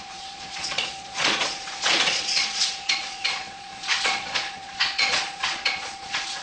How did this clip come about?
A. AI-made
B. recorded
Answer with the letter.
A